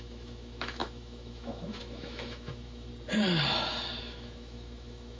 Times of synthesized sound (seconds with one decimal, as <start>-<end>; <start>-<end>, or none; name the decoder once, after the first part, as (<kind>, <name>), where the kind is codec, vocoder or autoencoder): 0.0-2.9 (autoencoder, DAC-VAE); 4.0-5.2